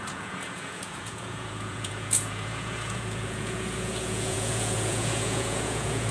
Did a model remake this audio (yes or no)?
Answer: yes